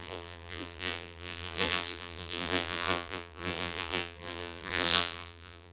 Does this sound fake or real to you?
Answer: fake